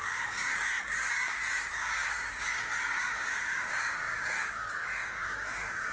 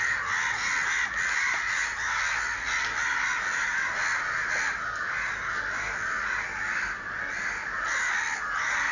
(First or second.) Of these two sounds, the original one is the second